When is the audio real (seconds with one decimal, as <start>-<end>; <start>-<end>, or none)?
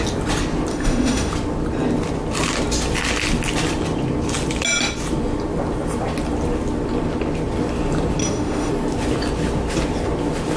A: 0.0-0.7; 1.3-8.2; 8.7-10.6